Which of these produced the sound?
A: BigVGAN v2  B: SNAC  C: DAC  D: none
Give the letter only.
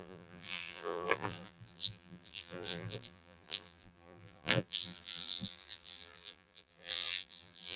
A